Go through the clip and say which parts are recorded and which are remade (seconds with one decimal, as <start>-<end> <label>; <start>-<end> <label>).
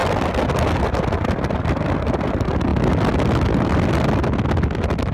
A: 0.0-5.1 recorded